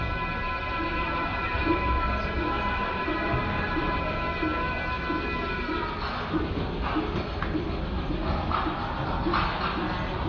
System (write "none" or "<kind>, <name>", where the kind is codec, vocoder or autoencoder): none